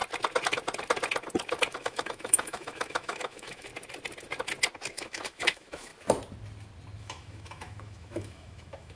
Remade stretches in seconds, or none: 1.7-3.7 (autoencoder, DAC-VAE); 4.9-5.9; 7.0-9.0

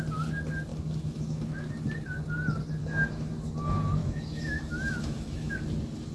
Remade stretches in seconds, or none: 0.7-1.7 (autoencoder, DAC-VAE); 2.8-3.3; 4.0-5.5